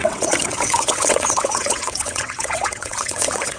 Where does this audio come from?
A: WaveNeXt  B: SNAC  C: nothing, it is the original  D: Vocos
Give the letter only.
A